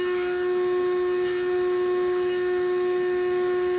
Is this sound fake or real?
fake